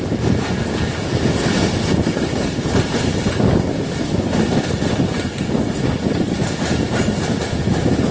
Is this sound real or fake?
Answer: real